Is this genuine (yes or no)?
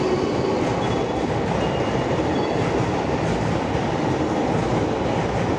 yes